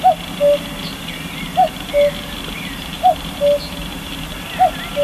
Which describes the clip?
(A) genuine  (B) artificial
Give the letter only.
A